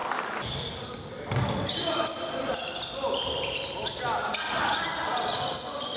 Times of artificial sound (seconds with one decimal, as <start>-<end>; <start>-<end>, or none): 0.0-1.1; 1.8-2.9